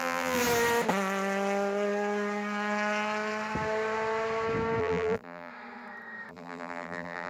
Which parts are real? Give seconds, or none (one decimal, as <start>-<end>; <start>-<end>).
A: 0.4-4.8; 5.5-6.3